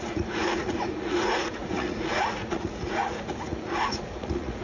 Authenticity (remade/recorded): remade